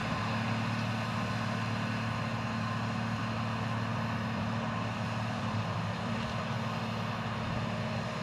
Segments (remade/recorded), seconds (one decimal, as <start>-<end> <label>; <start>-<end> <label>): 0.0-1.1 remade; 1.1-2.3 recorded; 2.3-3.2 remade; 3.2-3.9 recorded; 3.9-6.4 remade; 6.4-8.2 recorded